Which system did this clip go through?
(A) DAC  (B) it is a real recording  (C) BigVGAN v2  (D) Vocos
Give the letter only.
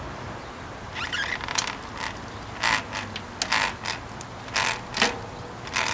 B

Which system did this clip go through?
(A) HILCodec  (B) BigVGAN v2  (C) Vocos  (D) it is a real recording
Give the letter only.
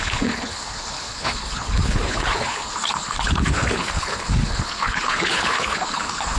A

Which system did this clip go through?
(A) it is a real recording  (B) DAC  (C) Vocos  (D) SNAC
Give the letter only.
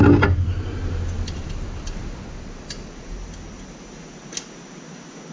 A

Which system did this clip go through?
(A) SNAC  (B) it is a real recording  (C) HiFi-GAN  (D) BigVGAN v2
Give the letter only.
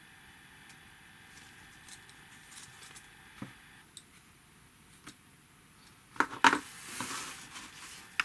B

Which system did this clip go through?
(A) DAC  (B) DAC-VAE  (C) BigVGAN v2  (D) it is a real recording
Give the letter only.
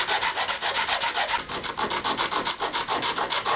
D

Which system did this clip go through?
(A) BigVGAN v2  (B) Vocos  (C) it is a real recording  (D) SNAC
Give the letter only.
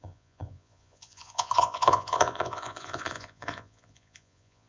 B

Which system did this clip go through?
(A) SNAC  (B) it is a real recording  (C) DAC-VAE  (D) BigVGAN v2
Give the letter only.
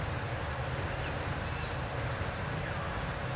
B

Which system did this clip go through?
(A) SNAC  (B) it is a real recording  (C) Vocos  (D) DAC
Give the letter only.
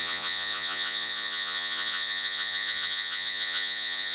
C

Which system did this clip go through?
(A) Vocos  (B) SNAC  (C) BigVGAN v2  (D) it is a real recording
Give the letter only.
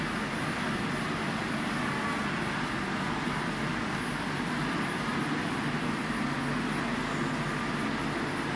D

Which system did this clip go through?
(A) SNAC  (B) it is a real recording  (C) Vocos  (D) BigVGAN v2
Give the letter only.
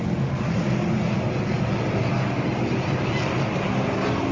B